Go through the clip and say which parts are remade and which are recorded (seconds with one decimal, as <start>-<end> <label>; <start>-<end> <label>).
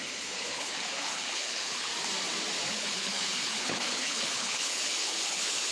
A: 0.0-1.9 remade; 1.9-2.7 recorded; 2.7-5.7 remade